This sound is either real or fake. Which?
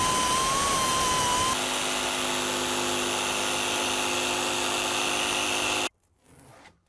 real